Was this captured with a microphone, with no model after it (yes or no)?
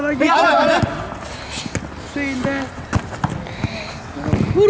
yes